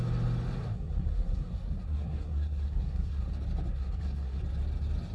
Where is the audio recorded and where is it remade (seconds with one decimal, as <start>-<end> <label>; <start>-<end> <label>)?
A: 0.0-0.6 recorded; 0.6-3.3 remade; 3.3-3.7 recorded; 3.7-4.4 remade; 4.4-5.1 recorded